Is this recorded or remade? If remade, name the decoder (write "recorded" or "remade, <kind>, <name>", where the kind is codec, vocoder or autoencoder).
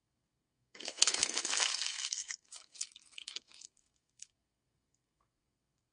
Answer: remade, codec, SNAC